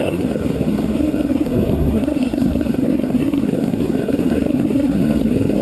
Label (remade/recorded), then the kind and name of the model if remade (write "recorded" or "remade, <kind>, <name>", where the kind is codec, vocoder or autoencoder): remade, codec, SNAC